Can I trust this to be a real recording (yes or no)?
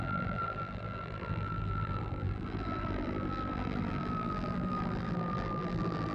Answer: no